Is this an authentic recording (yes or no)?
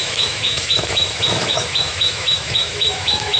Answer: no